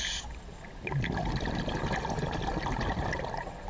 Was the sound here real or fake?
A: real